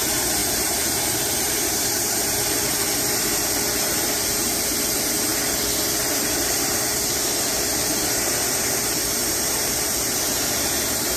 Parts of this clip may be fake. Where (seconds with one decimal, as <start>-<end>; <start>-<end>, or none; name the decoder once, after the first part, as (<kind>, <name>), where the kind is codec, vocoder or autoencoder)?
0.0-5.3 (vocoder, BigVGAN v2); 6.0-11.2